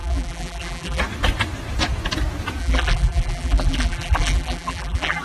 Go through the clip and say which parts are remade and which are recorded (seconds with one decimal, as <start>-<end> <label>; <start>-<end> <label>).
0.0-1.0 remade; 1.0-2.6 recorded; 2.6-5.2 remade